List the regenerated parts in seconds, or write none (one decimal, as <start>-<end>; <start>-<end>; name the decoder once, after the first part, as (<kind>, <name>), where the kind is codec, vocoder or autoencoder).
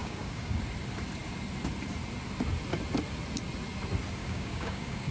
0.0-0.6 (codec, DAC); 4.2-5.1